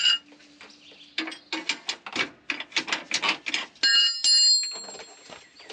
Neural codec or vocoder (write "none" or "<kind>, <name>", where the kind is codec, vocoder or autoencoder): none